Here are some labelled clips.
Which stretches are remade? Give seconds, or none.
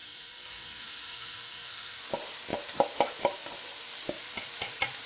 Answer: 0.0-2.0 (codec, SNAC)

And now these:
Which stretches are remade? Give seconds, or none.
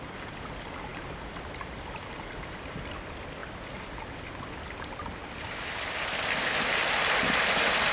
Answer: none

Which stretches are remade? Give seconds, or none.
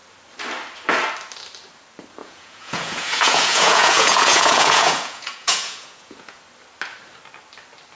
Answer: 2.2-6.4 (vocoder, Vocos)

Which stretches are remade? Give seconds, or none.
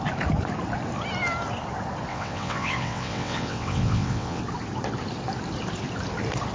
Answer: 2.1-4.4 (vocoder, WaveNeXt)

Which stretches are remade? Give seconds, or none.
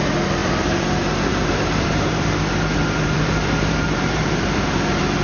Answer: 0.4-0.9 (vocoder, BigVGAN v2); 1.3-4.4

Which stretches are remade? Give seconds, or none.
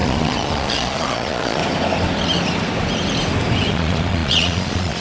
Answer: 0.0-1.6 (vocoder, Vocos); 3.7-5.0